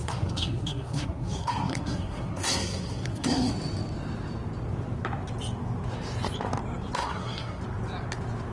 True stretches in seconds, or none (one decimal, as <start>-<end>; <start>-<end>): 3.5-7.0; 7.6-8.5